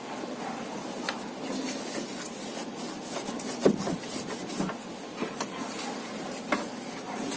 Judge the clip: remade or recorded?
recorded